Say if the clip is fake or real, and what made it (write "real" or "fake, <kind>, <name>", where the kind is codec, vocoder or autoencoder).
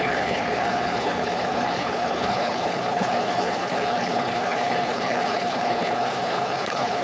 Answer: fake, codec, HILCodec